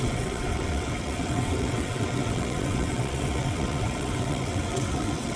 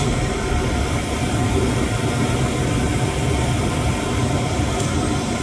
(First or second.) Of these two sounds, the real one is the second